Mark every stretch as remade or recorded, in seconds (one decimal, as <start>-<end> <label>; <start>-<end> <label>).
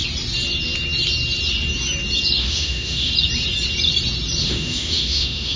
0.0-2.4 recorded; 2.4-3.1 remade; 3.1-4.4 recorded; 4.4-5.6 remade